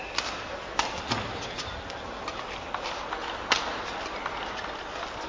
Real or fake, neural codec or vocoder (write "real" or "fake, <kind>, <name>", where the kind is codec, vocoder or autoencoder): real